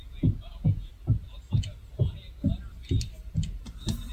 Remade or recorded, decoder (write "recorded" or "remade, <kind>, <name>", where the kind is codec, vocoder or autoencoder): recorded